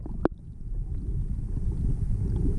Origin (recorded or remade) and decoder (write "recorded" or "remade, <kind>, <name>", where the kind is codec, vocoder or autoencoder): recorded